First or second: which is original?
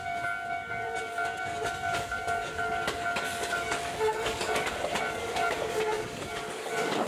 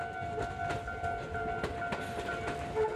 second